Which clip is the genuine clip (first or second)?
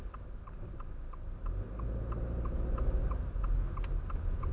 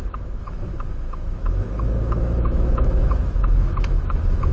first